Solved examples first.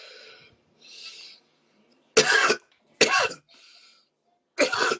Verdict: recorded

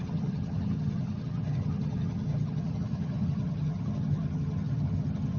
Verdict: remade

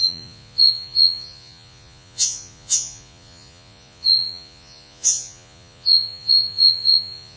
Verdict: remade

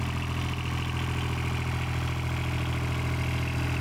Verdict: recorded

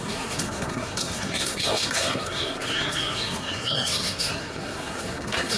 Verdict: remade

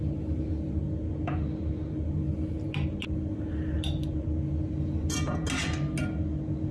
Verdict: recorded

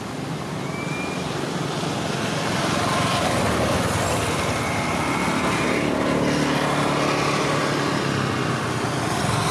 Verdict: recorded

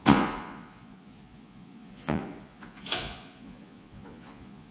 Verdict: remade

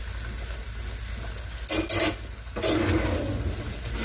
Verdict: recorded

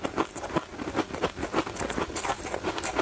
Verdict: recorded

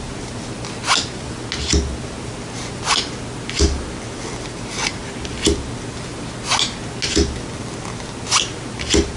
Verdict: recorded